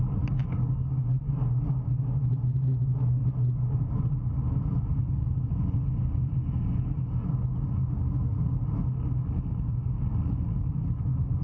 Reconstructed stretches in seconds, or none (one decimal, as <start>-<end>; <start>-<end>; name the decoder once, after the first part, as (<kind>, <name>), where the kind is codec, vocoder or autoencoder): 0.4-1.3 (codec, DAC)